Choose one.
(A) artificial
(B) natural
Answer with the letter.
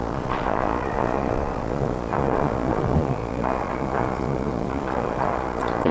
A